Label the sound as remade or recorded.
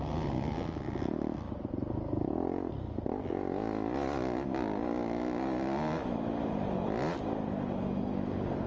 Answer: recorded